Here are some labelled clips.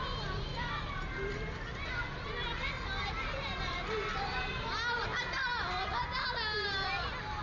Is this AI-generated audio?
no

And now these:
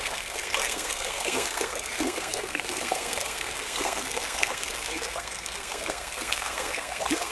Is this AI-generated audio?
yes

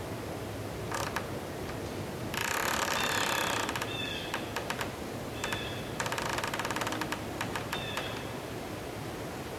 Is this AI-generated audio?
no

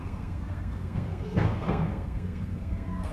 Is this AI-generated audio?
yes